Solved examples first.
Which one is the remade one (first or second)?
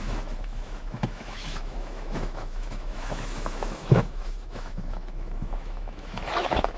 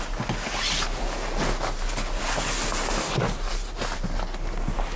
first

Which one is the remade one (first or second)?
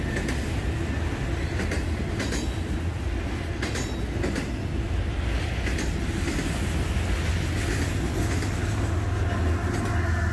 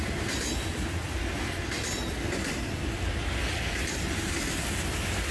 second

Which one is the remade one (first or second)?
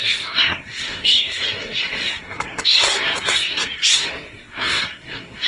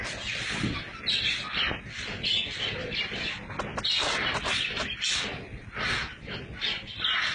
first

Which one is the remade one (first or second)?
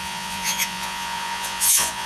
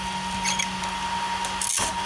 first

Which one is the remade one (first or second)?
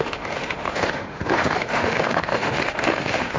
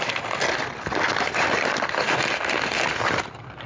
first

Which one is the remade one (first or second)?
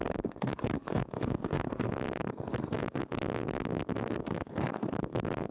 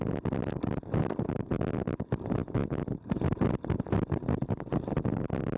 first